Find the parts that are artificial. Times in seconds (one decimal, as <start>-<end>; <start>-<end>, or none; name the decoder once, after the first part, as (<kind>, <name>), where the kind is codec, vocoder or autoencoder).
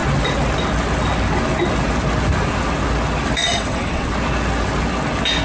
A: 3.4-4.1 (vocoder, WaveNeXt)